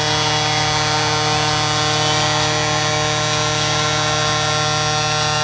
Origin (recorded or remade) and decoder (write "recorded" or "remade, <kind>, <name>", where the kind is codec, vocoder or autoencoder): recorded